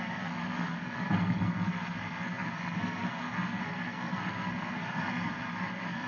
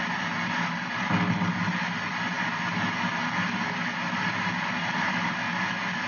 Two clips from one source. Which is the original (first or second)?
second